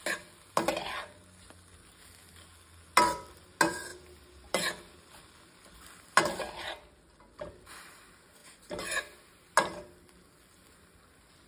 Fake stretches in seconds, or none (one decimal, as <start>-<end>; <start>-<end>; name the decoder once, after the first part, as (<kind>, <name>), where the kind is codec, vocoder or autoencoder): none